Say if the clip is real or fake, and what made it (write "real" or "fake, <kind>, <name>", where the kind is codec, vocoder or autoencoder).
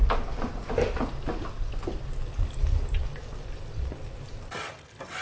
fake, vocoder, BigVGAN v2